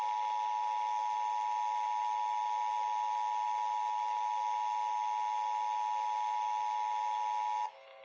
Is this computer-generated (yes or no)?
no